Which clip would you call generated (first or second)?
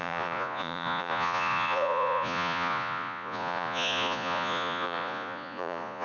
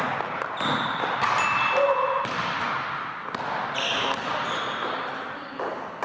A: first